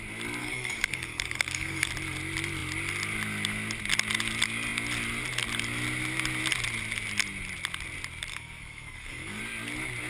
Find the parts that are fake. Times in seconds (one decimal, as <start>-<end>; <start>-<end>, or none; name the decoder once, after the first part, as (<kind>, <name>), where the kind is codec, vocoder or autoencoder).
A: 0.4-1.9 (codec, DAC); 8.3-9.4